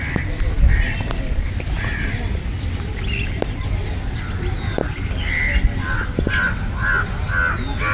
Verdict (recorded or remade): recorded